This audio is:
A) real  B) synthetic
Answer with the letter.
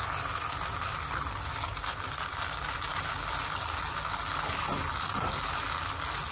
A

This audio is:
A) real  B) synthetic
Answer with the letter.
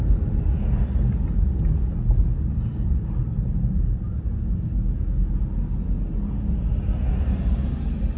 A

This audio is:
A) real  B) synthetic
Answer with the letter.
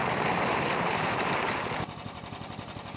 A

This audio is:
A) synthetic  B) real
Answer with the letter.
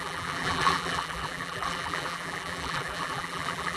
A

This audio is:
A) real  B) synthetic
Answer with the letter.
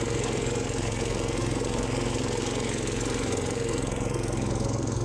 B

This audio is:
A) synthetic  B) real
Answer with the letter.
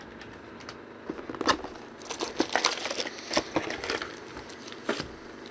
B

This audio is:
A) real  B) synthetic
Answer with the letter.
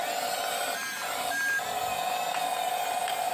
A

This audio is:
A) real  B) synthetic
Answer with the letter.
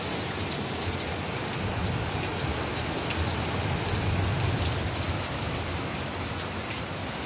A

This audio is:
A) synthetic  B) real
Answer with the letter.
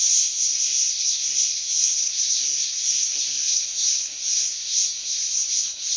A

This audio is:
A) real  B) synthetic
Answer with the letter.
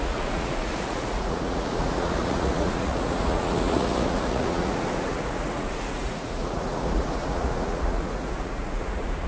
B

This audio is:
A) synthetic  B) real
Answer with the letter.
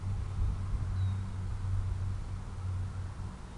B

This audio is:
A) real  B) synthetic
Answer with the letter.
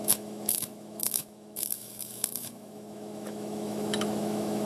B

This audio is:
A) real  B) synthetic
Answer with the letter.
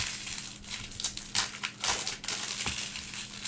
A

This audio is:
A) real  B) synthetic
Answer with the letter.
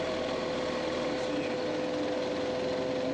A